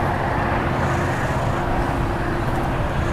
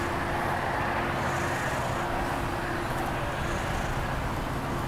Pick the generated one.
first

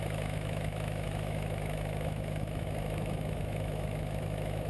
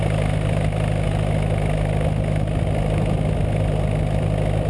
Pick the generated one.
first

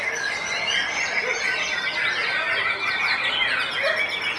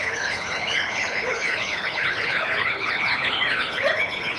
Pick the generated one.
second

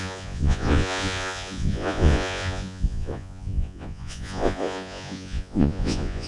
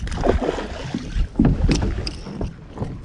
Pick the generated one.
first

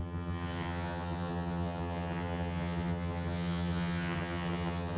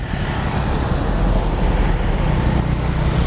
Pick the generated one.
first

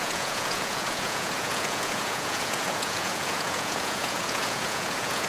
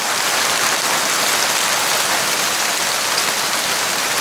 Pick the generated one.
first